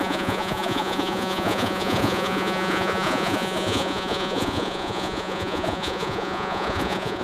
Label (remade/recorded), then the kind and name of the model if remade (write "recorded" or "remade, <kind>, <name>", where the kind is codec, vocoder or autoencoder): remade, vocoder, Vocos